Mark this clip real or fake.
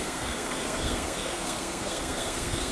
fake